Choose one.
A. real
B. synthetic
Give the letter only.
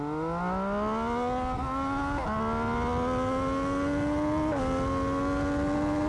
A